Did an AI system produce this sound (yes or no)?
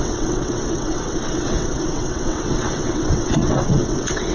yes